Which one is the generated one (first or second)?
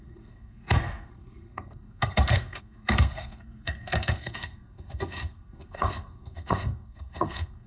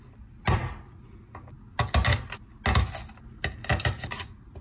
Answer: first